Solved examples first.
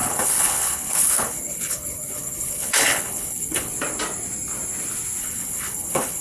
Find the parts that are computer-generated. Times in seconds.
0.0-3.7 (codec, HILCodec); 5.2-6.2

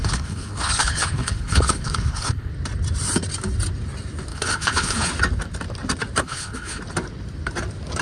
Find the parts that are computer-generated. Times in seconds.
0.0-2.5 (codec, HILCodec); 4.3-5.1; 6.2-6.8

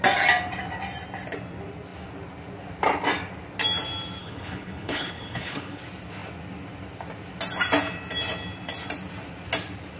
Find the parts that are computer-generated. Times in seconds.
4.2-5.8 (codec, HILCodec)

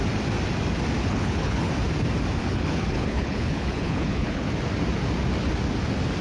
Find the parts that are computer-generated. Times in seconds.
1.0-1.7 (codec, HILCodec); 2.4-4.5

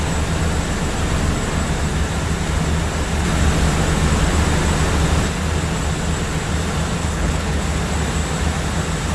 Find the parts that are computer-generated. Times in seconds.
7.0-7.6 (codec, HILCodec)